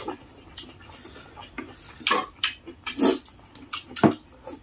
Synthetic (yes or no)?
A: no